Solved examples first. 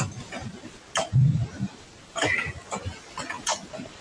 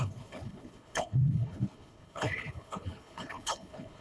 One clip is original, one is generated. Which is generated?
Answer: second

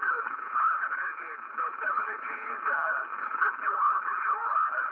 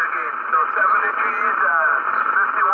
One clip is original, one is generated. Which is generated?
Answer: first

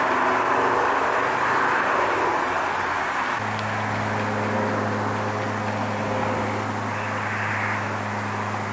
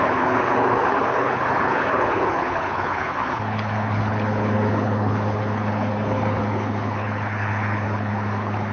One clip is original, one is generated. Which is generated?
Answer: second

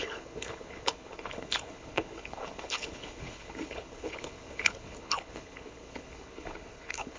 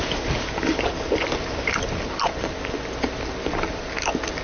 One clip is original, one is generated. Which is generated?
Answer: first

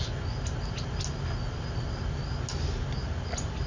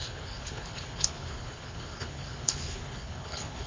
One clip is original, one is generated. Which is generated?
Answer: second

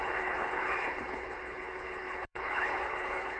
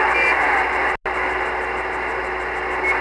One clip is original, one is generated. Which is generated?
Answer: first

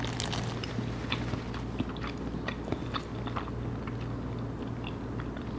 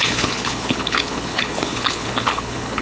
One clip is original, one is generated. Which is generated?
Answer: second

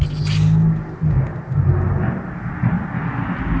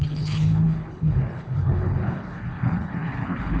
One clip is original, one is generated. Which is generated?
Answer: second